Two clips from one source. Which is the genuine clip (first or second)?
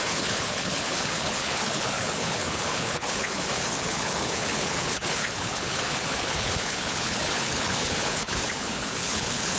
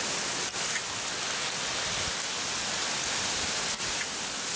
second